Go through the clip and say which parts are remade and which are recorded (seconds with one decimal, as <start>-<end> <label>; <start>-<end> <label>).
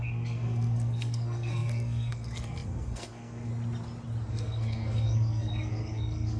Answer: 0.0-3.5 remade; 3.5-4.3 recorded; 4.3-6.4 remade